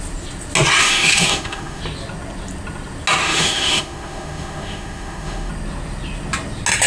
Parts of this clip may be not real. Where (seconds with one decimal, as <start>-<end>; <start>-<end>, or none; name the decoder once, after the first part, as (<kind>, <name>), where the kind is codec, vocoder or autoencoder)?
0.8-1.8 (autoencoder, DAC-VAE); 3.2-5.5